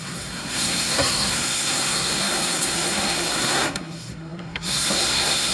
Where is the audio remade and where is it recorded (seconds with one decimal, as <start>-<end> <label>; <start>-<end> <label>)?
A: 0.0-5.5 remade